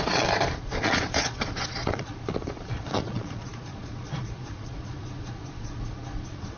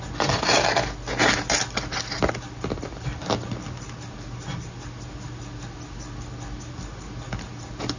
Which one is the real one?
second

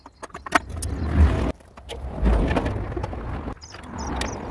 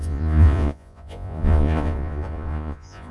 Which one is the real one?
first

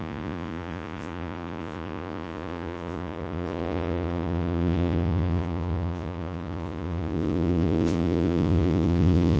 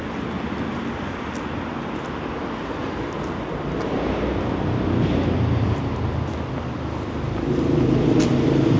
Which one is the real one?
second